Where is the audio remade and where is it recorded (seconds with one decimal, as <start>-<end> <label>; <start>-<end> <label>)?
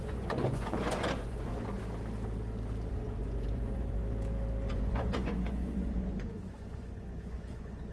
0.0-1.5 remade; 1.5-2.9 recorded; 2.9-4.0 remade; 4.0-4.7 recorded; 4.7-7.9 remade